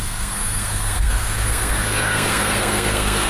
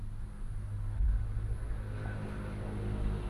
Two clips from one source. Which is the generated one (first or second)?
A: first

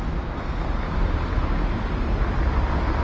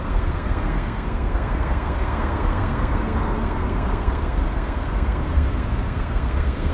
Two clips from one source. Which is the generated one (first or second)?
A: second